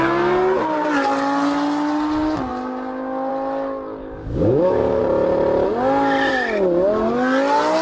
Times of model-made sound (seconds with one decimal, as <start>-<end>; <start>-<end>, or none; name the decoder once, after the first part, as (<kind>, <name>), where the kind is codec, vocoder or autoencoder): 4.0-5.0 (codec, DAC)